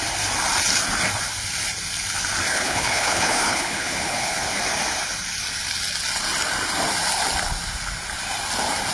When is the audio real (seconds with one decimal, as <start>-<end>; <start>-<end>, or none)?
0.0-2.5; 4.6-8.9